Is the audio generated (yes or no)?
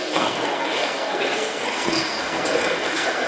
yes